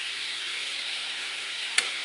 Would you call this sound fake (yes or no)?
yes